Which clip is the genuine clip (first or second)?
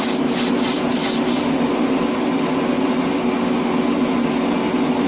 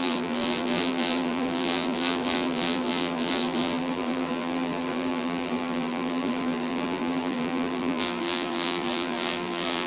first